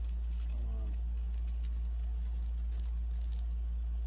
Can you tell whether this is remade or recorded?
recorded